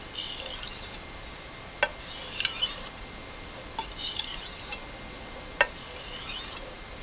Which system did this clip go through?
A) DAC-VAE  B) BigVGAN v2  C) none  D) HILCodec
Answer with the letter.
C